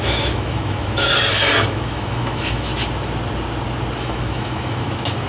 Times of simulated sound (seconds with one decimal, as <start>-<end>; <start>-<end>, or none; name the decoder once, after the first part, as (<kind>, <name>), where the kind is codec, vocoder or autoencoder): 0.0-1.1 (autoencoder, DAC-VAE); 1.7-2.7; 4.0-5.3

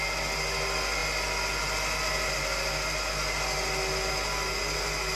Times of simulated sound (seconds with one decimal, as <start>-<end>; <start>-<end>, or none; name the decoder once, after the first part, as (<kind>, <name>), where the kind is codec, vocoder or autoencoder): none